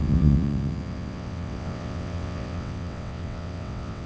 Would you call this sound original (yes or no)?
no